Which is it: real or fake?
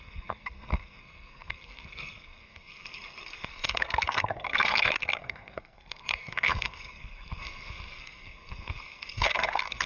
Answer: fake